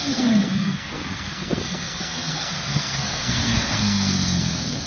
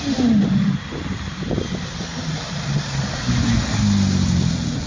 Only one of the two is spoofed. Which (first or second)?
first